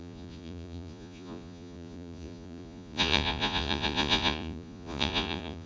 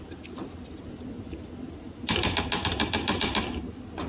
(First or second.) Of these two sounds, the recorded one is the second